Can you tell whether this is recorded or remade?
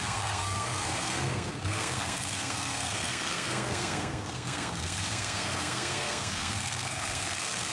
remade